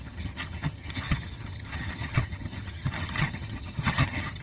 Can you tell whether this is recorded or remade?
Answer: remade